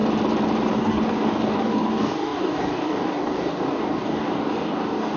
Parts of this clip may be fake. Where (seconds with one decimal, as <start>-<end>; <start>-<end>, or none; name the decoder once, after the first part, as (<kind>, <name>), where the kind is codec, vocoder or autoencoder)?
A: 0.7-5.2 (codec, DAC)